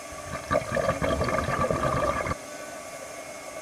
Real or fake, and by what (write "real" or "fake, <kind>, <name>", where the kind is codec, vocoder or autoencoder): real